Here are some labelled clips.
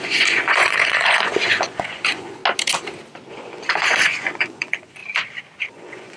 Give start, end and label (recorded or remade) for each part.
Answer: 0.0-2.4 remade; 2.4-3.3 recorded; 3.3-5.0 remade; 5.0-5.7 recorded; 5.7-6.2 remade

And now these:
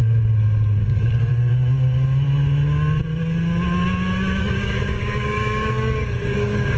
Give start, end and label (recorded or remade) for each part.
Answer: 0.0-0.8 recorded; 0.8-1.3 remade; 1.3-4.4 recorded; 4.4-6.8 remade

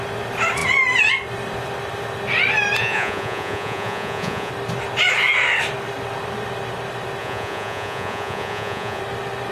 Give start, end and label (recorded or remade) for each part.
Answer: 0.0-2.8 recorded; 2.8-4.5 remade; 4.5-7.2 recorded; 7.2-9.0 remade; 9.0-9.5 recorded

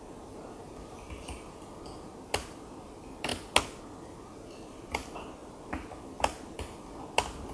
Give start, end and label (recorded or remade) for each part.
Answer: 0.0-7.5 recorded

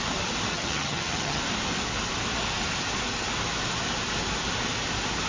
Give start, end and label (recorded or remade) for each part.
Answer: 0.0-0.5 recorded; 0.5-1.4 remade; 1.4-5.3 recorded